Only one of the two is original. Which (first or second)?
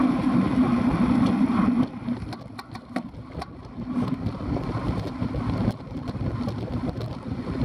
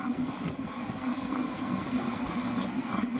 first